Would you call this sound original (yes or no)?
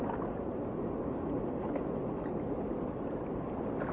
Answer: yes